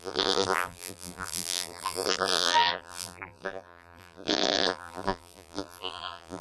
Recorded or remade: remade